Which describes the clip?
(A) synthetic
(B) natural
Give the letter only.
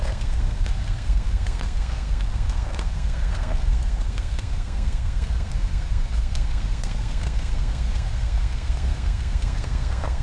A